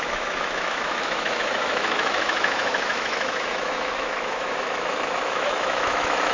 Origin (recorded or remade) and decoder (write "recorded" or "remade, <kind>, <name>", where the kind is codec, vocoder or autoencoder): remade, autoencoder, DAC-VAE